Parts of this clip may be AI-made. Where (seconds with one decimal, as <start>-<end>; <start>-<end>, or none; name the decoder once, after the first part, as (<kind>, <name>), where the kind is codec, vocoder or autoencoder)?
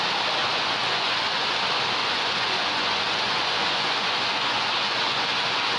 0.4-1.6 (vocoder, Vocos); 2.0-5.8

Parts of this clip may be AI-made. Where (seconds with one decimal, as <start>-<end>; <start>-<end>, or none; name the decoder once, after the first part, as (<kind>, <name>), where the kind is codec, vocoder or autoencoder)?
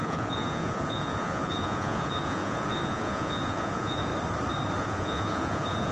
0.0-4.1 (vocoder, Vocos); 4.8-5.9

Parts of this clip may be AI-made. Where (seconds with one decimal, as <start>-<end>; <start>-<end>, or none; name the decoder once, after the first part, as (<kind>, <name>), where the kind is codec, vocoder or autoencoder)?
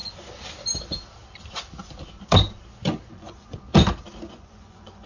3.1-3.7 (vocoder, Vocos); 4.3-5.1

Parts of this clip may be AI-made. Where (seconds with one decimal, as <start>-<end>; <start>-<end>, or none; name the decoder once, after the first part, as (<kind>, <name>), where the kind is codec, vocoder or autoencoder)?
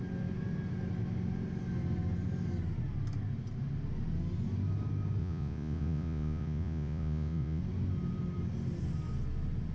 5.2-7.6 (vocoder, Vocos)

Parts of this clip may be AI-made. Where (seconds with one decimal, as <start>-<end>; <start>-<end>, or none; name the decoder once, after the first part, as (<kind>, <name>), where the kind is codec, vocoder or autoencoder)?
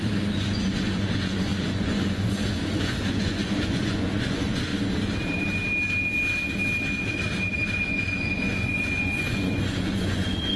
0.0-4.7 (vocoder, Vocos); 7.8-10.6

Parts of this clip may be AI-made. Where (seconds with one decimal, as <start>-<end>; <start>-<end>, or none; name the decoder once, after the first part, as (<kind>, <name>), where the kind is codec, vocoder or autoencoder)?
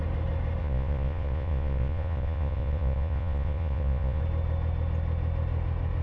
0.6-4.2 (vocoder, Vocos)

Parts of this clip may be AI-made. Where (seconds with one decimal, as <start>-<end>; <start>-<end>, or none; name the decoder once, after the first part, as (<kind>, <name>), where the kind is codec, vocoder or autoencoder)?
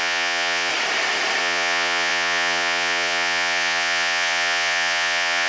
0.0-0.7 (vocoder, Vocos); 1.4-5.5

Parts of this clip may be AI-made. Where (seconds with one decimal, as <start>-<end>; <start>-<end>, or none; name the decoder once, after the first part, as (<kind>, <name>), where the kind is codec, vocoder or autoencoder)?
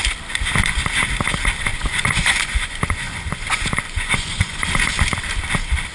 1.7-4.8 (vocoder, Vocos)